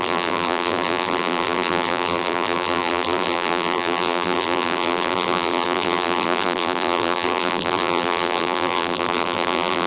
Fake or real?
fake